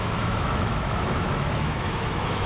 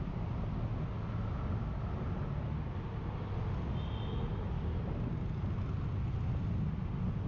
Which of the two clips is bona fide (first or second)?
second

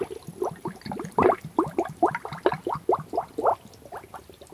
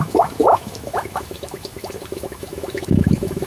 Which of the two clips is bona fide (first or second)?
first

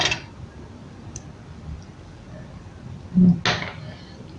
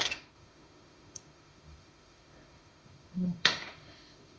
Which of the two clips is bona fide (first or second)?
first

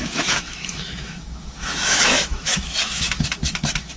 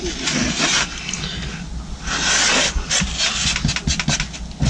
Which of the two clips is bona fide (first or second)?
second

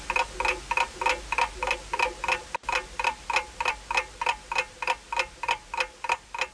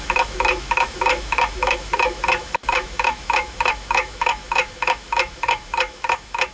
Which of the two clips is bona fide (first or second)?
first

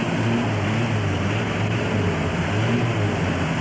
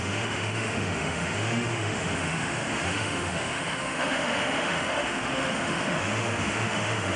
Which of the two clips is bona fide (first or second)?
first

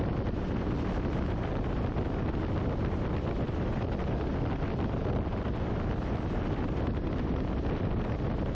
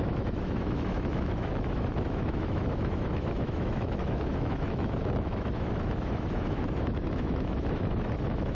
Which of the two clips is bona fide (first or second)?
first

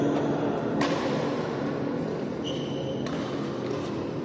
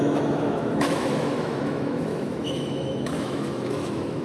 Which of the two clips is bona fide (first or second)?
first